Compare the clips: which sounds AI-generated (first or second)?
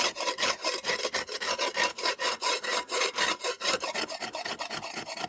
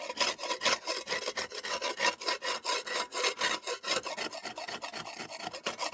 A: first